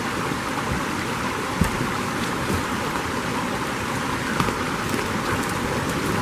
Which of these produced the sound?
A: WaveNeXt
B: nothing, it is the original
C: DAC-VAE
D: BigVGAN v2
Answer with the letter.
B